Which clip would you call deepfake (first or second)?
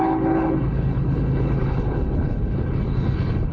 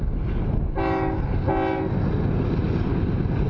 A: first